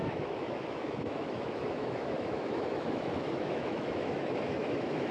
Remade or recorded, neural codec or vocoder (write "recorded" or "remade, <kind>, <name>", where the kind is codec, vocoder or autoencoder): remade, autoencoder, DAC-VAE